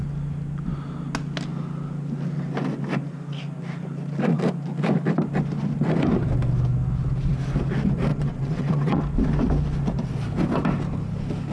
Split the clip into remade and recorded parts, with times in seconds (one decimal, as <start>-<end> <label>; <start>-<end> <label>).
0.0-8.1 recorded; 8.1-9.0 remade; 9.0-11.5 recorded